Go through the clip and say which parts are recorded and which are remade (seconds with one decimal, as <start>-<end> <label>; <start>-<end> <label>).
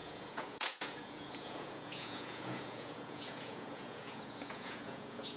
0.0-5.4 remade